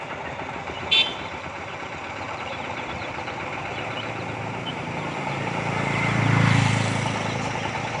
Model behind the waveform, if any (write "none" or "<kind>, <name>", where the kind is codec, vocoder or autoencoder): vocoder, BigVGAN v2